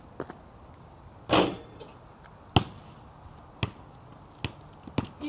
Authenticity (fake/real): real